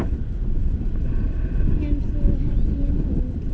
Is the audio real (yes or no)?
yes